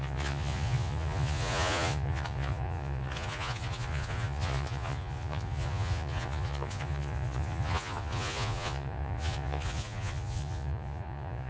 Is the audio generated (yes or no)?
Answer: yes